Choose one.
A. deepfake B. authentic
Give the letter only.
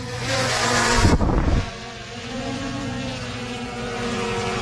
A